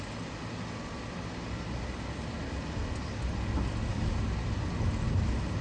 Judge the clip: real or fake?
real